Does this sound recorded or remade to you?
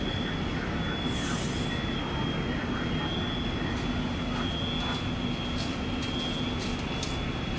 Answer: recorded